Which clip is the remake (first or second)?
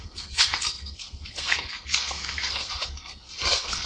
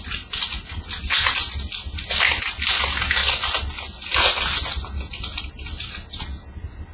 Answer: first